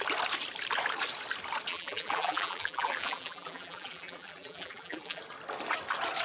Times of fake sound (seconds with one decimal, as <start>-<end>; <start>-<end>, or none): 1.7-5.2